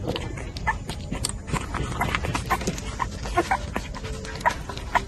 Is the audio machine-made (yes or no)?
no